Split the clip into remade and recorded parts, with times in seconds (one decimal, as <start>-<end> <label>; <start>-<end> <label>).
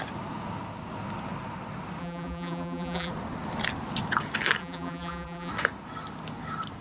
0.0-2.0 recorded; 2.0-3.1 remade; 3.1-4.6 recorded; 4.6-5.5 remade; 5.5-6.8 recorded